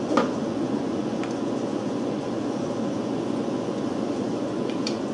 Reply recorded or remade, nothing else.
remade